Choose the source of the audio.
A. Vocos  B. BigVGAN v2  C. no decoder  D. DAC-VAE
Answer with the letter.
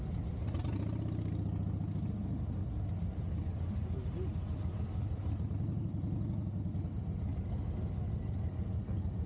C